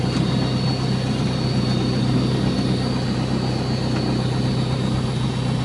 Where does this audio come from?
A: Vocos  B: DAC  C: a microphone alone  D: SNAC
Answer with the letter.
C